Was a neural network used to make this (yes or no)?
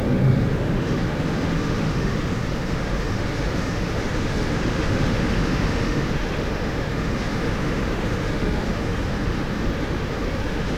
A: yes